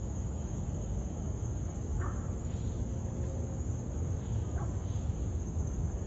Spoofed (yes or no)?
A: yes